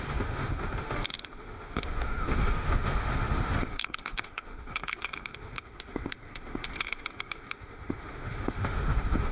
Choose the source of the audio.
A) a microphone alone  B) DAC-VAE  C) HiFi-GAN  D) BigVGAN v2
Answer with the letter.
B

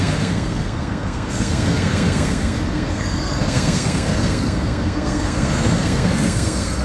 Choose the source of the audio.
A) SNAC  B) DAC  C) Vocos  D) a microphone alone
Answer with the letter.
A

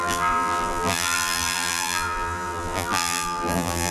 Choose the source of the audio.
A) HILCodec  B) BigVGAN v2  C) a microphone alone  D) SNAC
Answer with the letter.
B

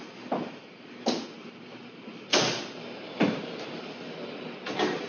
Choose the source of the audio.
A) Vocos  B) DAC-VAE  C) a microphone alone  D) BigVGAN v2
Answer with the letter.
D